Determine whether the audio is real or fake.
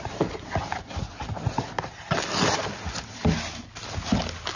real